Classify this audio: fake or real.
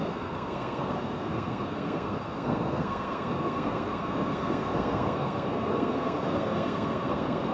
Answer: fake